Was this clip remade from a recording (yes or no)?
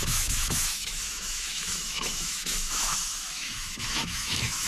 yes